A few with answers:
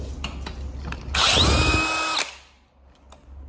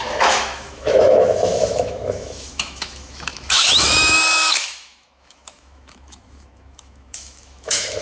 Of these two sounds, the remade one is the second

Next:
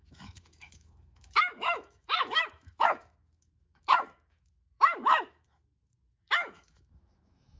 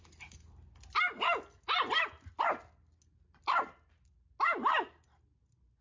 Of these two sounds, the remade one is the first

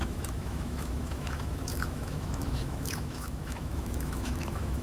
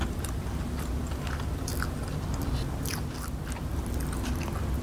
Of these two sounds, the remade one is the first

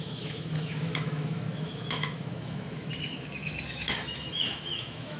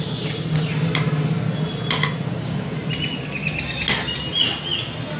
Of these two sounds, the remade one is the first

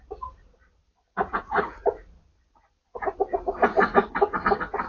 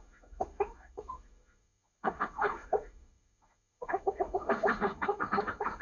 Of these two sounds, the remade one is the second